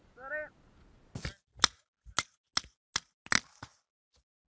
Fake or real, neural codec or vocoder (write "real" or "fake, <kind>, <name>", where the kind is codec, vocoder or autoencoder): real